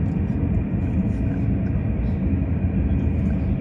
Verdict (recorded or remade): recorded